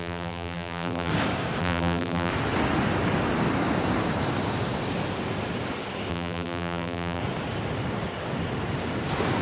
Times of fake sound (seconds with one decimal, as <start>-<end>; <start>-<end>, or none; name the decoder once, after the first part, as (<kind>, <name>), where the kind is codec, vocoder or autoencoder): 0.0-1.1 (vocoder, BigVGAN v2); 1.6-2.3; 6.1-7.2